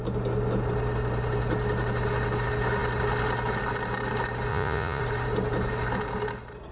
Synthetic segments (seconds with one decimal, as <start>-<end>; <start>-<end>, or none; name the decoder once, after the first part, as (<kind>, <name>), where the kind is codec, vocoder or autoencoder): 4.5-5.0 (vocoder, Vocos)